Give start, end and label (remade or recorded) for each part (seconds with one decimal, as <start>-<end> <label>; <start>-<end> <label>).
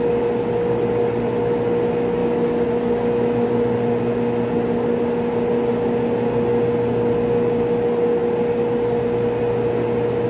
0.0-10.3 recorded